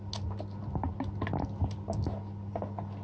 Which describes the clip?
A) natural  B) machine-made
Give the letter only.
A